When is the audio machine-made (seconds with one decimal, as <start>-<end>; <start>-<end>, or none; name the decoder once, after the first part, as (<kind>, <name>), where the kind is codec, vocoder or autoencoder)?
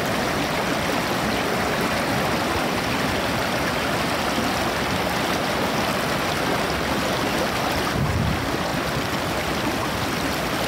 none